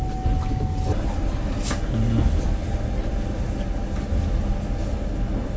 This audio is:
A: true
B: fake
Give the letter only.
A